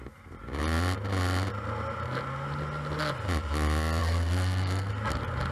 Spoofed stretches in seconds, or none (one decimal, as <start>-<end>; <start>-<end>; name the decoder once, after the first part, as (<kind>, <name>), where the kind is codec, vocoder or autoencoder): 4.0-4.9 (codec, SNAC)